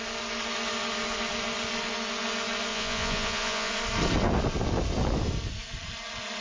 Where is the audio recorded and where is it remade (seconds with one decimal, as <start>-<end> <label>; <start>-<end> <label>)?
0.0-2.7 recorded; 2.7-3.7 remade; 3.7-6.4 recorded